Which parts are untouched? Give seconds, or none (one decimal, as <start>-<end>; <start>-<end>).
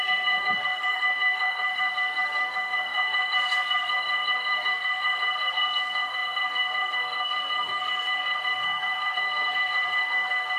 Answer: none